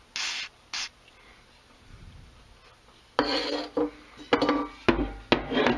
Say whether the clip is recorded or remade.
recorded